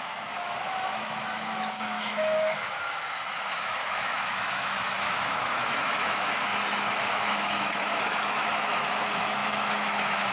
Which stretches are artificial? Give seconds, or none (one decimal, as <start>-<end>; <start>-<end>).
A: 0.0-6.5; 7.1-10.3